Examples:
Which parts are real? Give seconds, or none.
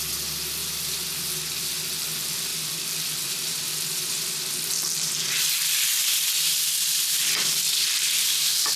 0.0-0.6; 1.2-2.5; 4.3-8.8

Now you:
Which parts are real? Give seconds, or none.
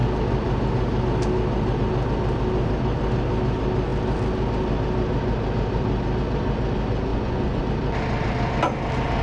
0.0-7.1; 7.6-9.2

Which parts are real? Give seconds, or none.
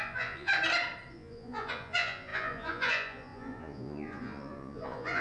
0.5-1.1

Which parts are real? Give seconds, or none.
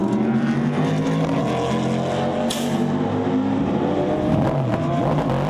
0.0-5.5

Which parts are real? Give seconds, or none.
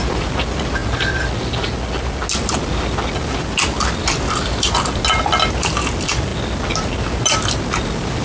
0.0-8.2